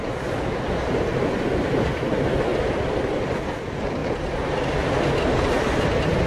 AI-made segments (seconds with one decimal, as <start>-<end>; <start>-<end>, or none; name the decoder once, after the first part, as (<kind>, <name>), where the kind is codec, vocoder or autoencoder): none